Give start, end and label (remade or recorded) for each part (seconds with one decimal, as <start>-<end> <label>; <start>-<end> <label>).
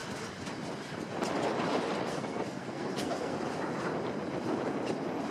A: 0.0-2.1 recorded; 2.1-3.4 remade; 3.4-5.3 recorded